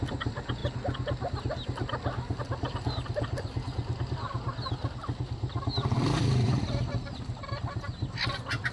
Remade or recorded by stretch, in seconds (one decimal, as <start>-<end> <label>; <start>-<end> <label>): 0.0-0.6 remade; 0.6-2.4 recorded; 2.4-8.7 remade